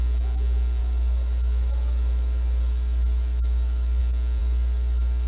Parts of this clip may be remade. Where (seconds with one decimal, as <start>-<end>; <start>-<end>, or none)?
0.8-4.0; 4.4-5.3